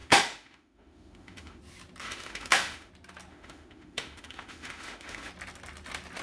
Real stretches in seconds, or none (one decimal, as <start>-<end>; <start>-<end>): 1.6-2.0; 2.9-3.3; 5.3-6.2